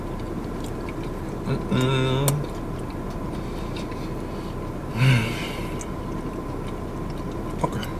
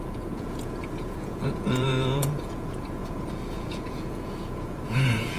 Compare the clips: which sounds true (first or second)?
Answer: first